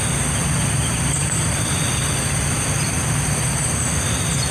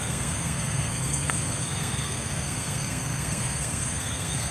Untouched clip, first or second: first